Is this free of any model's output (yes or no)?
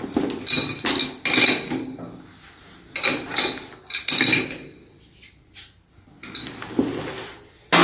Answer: yes